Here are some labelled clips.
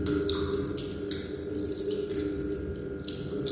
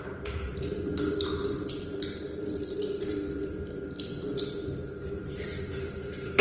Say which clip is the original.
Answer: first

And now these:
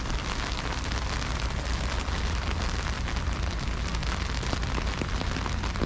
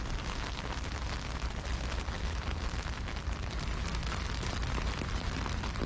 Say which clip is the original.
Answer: first